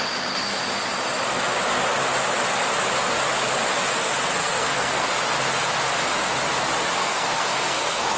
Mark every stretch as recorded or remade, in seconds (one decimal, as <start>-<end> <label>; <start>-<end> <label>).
0.0-4.4 recorded; 4.4-5.1 remade; 5.1-7.0 recorded; 7.0-8.2 remade